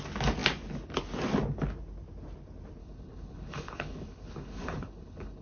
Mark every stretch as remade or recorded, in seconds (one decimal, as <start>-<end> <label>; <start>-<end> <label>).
0.0-2.8 recorded; 2.8-5.4 remade